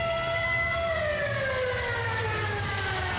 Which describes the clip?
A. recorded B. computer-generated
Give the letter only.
A